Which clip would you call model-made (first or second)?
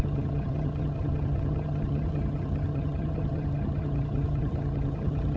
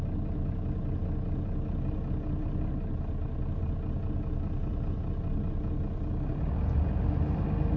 first